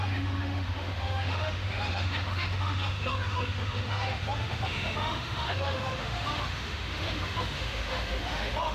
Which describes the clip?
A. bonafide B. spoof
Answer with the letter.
B